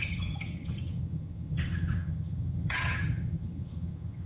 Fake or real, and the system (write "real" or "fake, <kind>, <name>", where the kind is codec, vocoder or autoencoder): fake, vocoder, HiFi-GAN